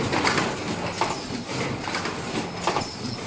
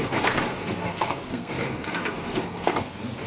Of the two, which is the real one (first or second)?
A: first